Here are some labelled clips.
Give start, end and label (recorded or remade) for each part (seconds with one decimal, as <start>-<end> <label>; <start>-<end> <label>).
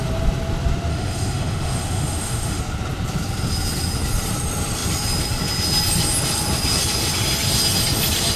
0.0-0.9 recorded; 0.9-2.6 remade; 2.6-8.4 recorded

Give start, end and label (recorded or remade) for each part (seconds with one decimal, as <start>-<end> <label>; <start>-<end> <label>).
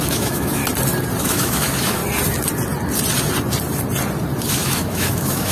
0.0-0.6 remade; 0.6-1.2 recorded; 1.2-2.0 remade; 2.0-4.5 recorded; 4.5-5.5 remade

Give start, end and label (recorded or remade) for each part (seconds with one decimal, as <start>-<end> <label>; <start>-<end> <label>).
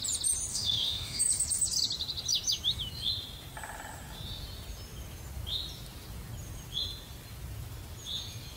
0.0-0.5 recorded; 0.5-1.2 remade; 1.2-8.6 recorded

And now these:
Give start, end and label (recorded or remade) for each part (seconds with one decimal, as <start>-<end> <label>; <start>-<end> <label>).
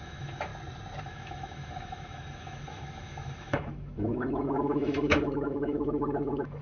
0.0-0.5 remade; 0.5-1.0 recorded; 1.0-6.6 remade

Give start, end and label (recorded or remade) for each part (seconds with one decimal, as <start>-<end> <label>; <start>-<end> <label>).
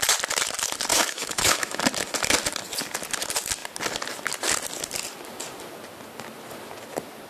0.0-0.9 recorded; 0.9-1.8 remade; 1.8-7.3 recorded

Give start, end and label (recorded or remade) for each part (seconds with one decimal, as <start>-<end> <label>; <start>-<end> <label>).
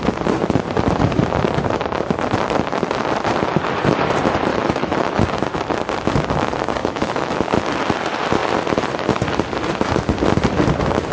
0.0-4.5 recorded; 4.5-5.2 remade; 5.2-6.8 recorded; 6.8-7.3 remade; 7.3-11.1 recorded